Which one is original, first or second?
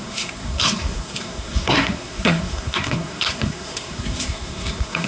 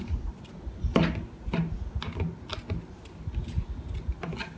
second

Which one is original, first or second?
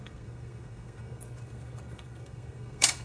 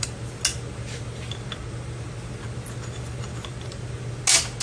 second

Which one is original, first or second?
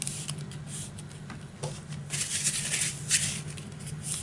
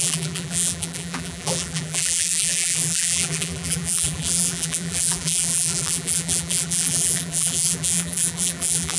first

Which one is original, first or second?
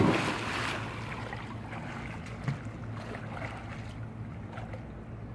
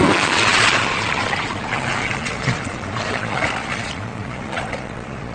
first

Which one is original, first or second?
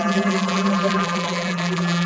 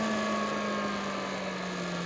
second